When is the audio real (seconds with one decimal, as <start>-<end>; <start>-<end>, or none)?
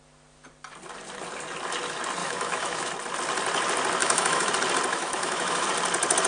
0.0-2.2; 2.9-4.0; 4.5-4.9; 5.7-6.3